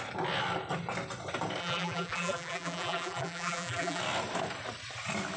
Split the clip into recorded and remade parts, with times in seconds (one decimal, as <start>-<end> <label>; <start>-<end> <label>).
0.0-1.6 recorded; 1.6-4.0 remade; 4.0-5.4 recorded